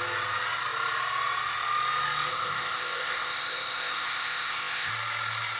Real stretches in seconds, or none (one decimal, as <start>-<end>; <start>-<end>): 0.0-2.3; 4.9-5.6